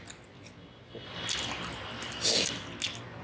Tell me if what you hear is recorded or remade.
recorded